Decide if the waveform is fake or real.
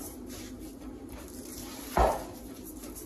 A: real